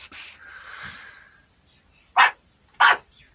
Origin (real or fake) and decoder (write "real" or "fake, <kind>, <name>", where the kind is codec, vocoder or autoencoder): real